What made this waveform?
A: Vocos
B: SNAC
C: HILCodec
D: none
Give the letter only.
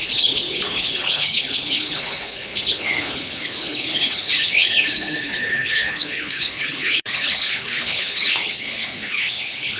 C